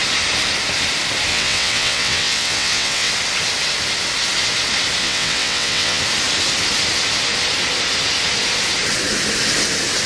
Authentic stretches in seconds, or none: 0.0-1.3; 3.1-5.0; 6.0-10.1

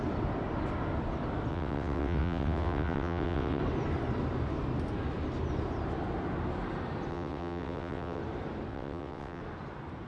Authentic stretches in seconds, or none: 0.0-1.5; 3.6-7.1; 8.2-8.7; 9.4-10.1

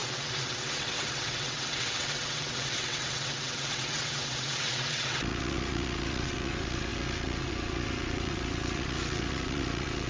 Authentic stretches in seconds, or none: none

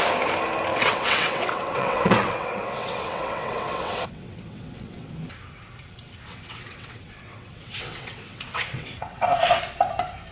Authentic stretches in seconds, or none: 0.0-0.7; 5.1-6.3; 9.2-10.3

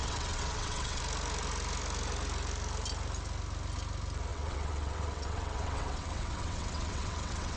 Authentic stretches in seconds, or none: 1.0-4.3

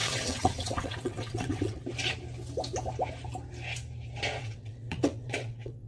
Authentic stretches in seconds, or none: 1.8-4.4

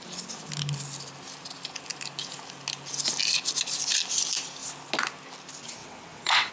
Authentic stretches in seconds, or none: 0.0-5.8